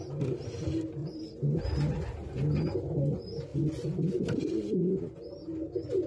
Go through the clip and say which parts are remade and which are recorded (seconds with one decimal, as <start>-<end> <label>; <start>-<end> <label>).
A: 0.0-1.0 recorded; 1.0-1.6 remade; 1.6-3.5 recorded; 3.5-4.2 remade; 4.2-6.1 recorded

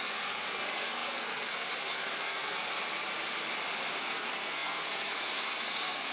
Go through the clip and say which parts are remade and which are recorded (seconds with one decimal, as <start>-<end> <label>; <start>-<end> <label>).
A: 0.0-2.7 remade; 2.7-4.0 recorded; 4.0-6.1 remade